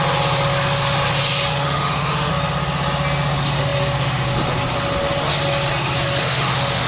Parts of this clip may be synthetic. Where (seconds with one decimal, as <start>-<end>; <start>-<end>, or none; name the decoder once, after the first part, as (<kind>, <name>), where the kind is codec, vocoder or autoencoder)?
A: 1.5-2.3 (autoencoder, DAC-VAE); 6.2-6.9